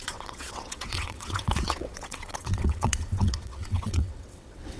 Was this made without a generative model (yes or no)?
no